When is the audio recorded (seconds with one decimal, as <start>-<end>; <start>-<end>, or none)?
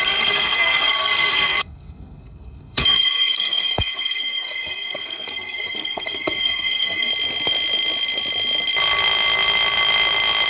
7.1-10.5